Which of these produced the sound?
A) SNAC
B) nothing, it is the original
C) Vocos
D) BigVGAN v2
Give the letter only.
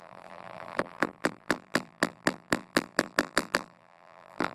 D